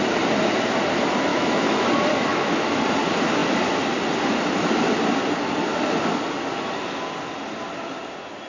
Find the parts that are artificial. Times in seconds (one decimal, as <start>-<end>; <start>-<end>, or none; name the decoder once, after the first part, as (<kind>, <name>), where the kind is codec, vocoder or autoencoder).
1.3-1.9 (autoencoder, DAC-VAE); 2.3-2.8